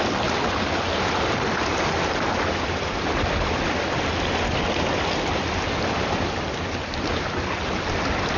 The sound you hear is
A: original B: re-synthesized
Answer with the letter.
A